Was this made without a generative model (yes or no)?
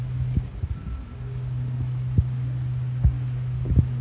yes